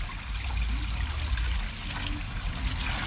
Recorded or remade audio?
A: recorded